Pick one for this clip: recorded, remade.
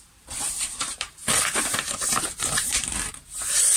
remade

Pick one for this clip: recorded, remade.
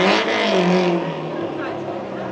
recorded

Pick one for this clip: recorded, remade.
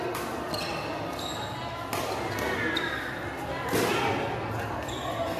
recorded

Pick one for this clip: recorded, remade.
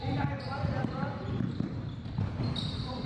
remade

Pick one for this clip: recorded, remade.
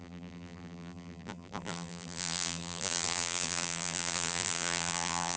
remade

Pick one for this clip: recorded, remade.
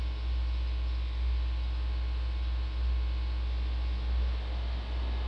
recorded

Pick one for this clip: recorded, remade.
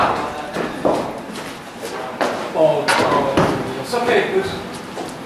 recorded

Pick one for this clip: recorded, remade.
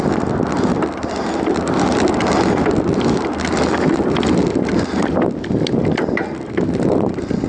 recorded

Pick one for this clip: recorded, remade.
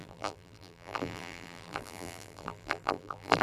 remade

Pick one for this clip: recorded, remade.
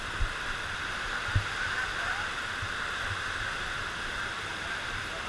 recorded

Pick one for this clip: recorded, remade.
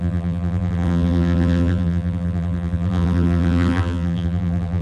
remade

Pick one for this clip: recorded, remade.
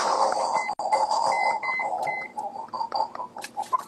recorded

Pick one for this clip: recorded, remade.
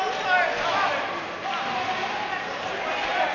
recorded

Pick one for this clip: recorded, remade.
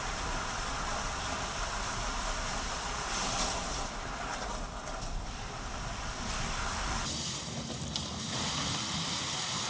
recorded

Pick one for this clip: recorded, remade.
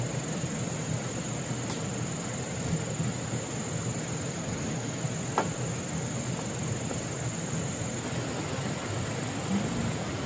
recorded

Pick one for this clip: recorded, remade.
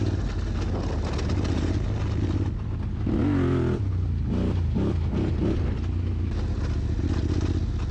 recorded